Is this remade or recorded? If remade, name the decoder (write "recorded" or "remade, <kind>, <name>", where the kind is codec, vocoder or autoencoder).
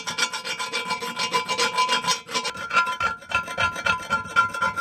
recorded